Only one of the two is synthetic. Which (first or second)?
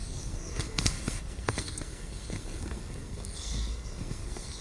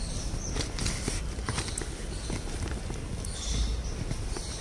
first